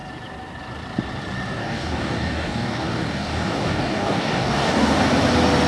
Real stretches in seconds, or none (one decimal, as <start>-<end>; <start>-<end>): 0.0-1.6; 5.0-5.7